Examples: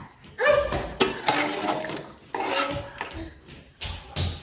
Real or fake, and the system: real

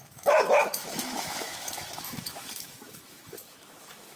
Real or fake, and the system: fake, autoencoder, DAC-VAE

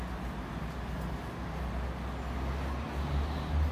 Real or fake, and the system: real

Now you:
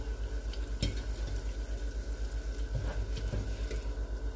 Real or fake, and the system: real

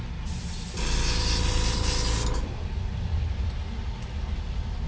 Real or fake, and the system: real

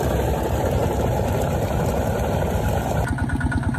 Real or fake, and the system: real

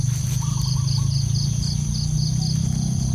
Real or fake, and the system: real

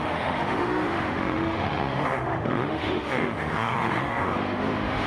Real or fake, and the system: fake, autoencoder, DAC-VAE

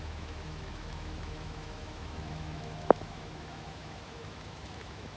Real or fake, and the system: fake, autoencoder, DAC-VAE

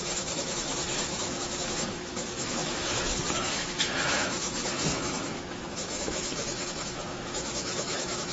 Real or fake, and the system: fake, autoencoder, DAC-VAE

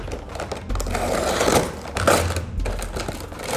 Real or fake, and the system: real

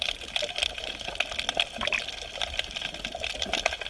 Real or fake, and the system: real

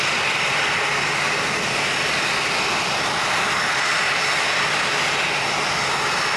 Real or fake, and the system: real